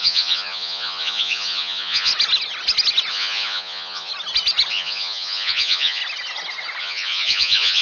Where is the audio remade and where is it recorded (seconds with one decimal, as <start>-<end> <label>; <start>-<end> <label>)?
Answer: 0.0-2.1 remade; 2.1-3.1 recorded; 3.1-4.1 remade; 4.1-4.7 recorded; 4.7-6.0 remade; 6.0-6.8 recorded; 6.8-7.8 remade